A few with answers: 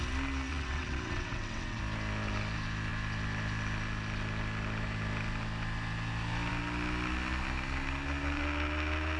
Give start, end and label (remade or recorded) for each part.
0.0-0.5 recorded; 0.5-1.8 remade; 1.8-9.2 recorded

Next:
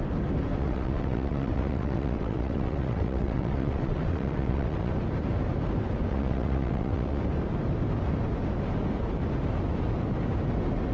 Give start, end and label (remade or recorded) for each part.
0.0-0.5 recorded; 0.5-4.9 remade; 4.9-6.1 recorded; 6.1-7.2 remade; 7.2-10.9 recorded

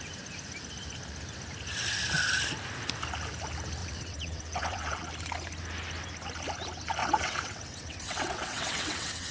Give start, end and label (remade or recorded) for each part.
0.0-3.8 recorded; 3.8-5.1 remade; 5.1-7.0 recorded; 7.0-9.3 remade

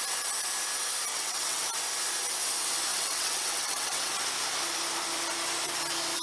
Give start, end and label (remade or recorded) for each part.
0.0-1.1 recorded; 1.1-1.7 remade; 1.7-2.9 recorded; 2.9-4.1 remade; 4.1-6.2 recorded